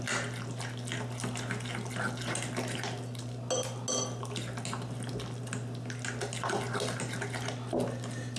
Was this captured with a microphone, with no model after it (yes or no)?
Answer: yes